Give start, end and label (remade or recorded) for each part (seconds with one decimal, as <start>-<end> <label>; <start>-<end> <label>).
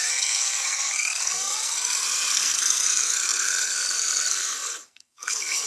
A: 0.0-5.7 remade